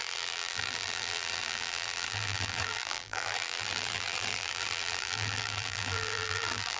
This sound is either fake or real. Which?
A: fake